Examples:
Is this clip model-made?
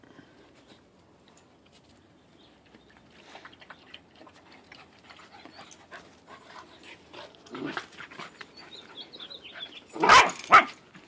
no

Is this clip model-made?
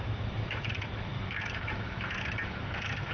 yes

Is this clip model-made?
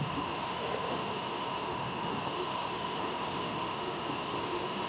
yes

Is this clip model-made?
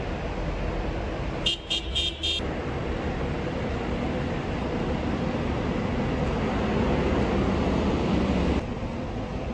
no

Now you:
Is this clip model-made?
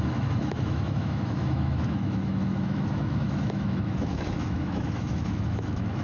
yes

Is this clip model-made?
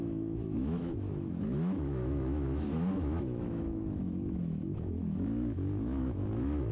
yes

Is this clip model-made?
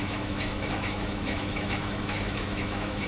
yes